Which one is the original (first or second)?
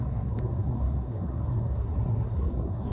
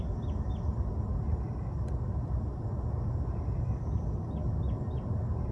second